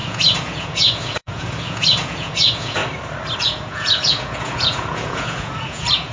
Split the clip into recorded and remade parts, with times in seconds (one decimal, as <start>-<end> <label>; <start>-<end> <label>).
0.0-2.8 remade; 2.8-3.4 recorded; 3.4-6.1 remade